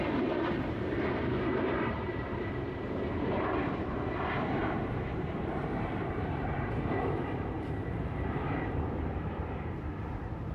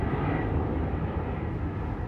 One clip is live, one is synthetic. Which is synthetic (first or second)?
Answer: first